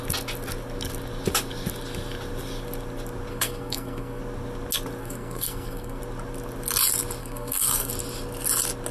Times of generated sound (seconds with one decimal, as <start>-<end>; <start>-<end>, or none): 3.3-4.2; 5.0-6.0; 7.2-7.9